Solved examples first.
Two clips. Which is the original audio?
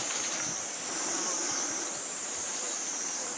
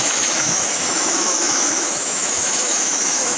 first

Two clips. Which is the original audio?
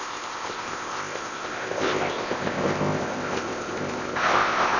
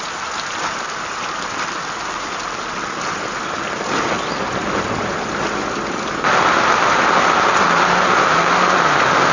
second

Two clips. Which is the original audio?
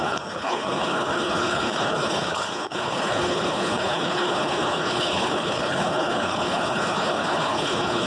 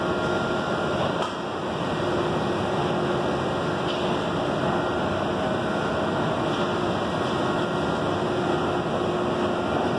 second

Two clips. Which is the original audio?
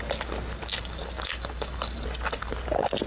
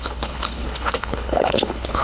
first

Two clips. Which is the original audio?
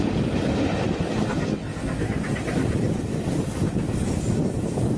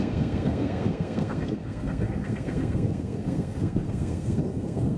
first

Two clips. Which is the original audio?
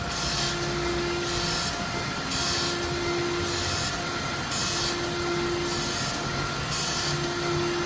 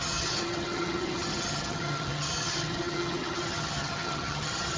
first